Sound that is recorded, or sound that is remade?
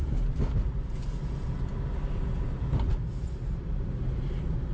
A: recorded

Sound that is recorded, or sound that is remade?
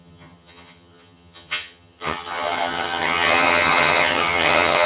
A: remade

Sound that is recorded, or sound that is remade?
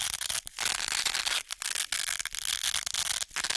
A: recorded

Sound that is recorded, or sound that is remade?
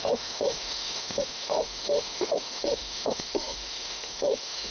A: remade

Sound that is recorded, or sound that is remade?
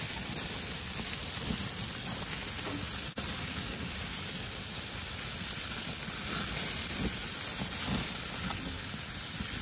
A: recorded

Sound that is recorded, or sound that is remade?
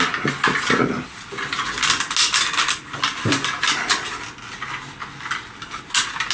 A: recorded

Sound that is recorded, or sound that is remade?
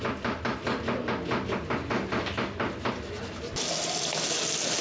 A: recorded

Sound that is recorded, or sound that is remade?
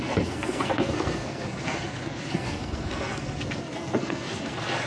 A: remade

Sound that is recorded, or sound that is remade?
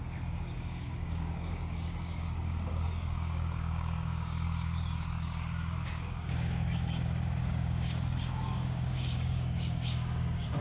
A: remade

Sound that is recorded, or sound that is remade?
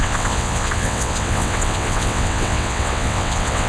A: remade